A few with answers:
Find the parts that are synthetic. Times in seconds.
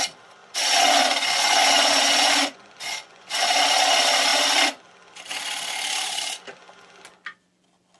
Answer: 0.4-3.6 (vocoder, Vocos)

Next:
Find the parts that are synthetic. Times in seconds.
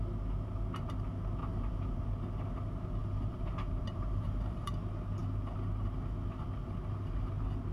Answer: 1.4-2.0 (vocoder, BigVGAN v2); 3.0-4.7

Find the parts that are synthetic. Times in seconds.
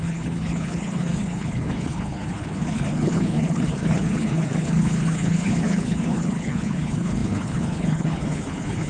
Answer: 0.0-8.9 (codec, HILCodec)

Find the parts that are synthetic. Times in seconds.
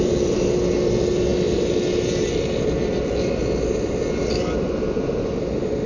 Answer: none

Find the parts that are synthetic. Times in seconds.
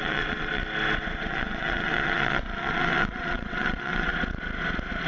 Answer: 0.0-0.6 (vocoder, WaveNeXt); 1.3-4.1